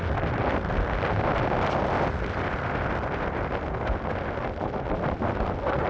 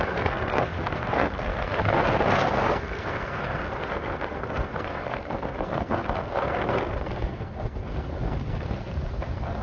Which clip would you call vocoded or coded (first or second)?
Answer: second